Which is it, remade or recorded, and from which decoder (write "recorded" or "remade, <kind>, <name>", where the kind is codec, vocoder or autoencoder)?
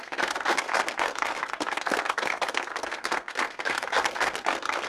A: remade, codec, SNAC